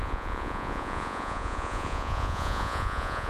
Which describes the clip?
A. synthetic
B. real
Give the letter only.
A